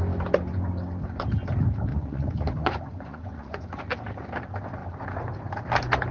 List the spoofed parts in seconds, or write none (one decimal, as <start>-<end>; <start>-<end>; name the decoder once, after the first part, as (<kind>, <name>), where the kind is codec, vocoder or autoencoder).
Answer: 1.9-3.8 (vocoder, Vocos)